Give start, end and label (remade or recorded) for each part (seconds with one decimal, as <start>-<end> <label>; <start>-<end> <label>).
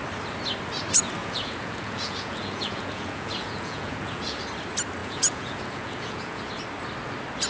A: 0.0-1.2 recorded; 1.2-4.4 remade; 4.4-5.0 recorded; 5.0-6.5 remade; 6.5-7.5 recorded